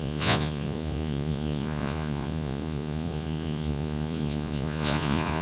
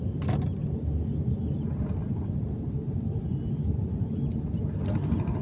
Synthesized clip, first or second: first